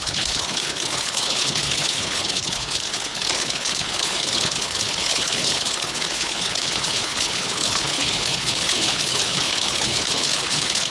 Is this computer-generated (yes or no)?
yes